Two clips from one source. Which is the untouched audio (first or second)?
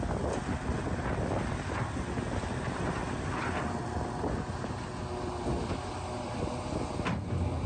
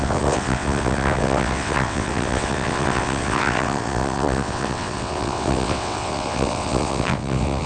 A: first